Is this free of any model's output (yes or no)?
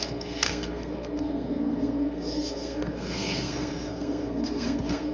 no